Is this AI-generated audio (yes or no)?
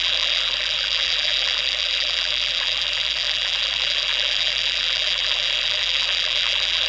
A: yes